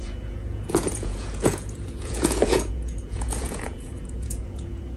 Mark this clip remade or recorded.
remade